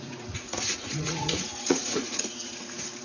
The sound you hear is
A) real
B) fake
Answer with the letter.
B